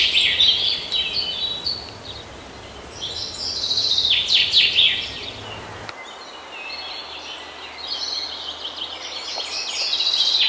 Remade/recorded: recorded